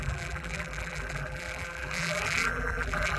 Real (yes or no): no